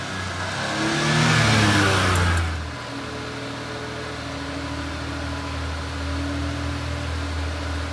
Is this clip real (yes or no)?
yes